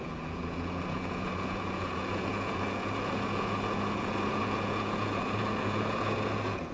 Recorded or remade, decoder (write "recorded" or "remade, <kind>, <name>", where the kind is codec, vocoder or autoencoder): remade, vocoder, Vocos